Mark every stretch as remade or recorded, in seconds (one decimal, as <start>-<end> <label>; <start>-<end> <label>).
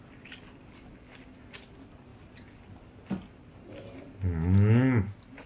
0.0-5.5 recorded